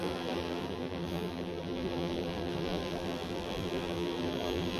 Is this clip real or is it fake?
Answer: fake